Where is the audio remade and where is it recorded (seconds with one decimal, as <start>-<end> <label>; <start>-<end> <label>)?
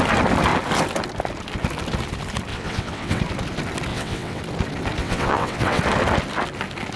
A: 0.0-2.5 recorded; 2.5-3.2 remade; 3.2-3.9 recorded; 3.9-4.4 remade; 4.4-5.0 recorded; 5.0-5.8 remade; 5.8-7.0 recorded